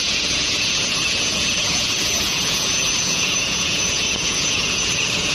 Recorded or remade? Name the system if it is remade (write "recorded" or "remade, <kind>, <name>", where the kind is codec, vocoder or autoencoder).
remade, vocoder, Vocos